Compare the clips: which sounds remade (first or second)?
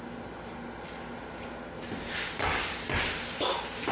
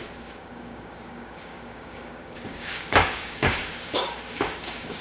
second